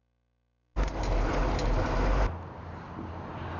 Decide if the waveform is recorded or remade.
recorded